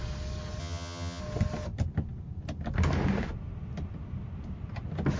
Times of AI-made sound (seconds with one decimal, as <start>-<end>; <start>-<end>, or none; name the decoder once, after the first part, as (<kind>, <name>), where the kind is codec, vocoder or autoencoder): 0.6-1.2 (vocoder, HiFi-GAN)